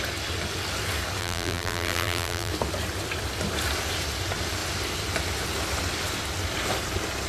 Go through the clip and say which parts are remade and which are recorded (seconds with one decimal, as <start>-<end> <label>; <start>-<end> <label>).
0.0-1.2 recorded; 1.2-2.5 remade; 2.5-7.3 recorded